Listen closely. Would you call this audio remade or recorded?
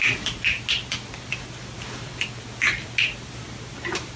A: recorded